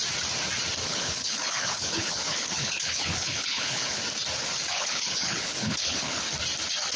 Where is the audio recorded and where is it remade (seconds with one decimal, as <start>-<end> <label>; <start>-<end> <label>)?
0.0-0.8 recorded; 0.8-4.0 remade; 4.0-4.7 recorded; 4.7-6.2 remade; 6.2-7.0 recorded